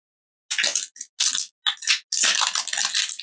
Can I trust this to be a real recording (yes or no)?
yes